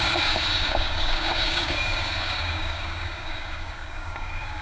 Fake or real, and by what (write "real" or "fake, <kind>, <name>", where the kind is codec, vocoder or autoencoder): fake, codec, DAC